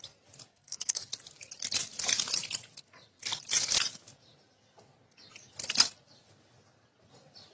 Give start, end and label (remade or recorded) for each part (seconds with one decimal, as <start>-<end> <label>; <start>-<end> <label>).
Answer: 0.0-0.5 recorded; 0.5-1.0 remade; 1.0-7.5 recorded